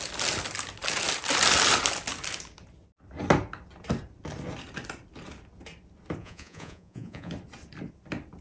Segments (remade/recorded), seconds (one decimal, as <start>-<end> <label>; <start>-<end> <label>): 0.0-6.2 recorded; 6.2-7.3 remade; 7.3-8.4 recorded